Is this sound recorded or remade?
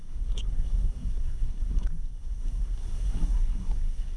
remade